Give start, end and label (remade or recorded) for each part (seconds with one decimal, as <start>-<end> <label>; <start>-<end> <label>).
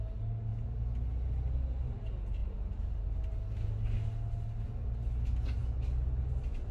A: 0.0-2.4 recorded; 2.4-3.2 remade; 3.2-6.7 recorded